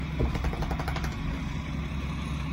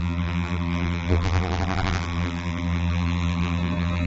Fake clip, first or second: second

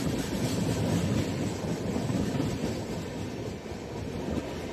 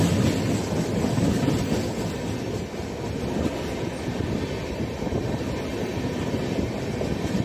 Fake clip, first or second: first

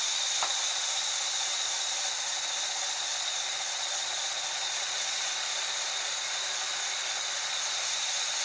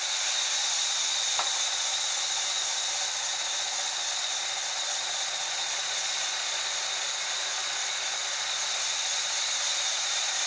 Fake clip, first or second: first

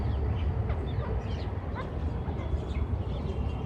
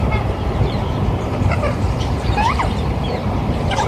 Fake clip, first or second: second